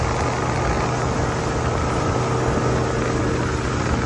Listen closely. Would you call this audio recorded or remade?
recorded